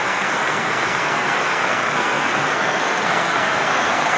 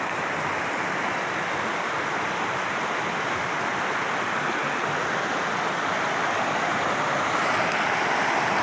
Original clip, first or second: second